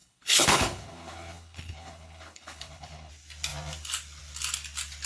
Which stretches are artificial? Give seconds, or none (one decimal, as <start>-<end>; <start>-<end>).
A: 0.0-3.1